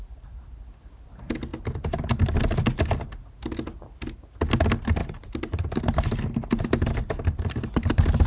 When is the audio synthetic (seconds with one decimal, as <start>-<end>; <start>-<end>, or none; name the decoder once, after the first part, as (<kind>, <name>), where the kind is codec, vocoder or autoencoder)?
0.0-0.6 (vocoder, BigVGAN v2); 5.0-5.8